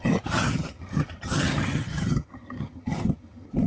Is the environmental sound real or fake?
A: fake